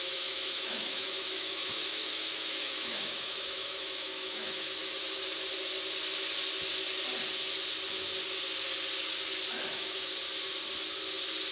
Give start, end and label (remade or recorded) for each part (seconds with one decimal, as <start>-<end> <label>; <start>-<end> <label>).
0.0-4.8 remade; 4.8-9.7 recorded; 9.7-10.1 remade; 10.1-11.5 recorded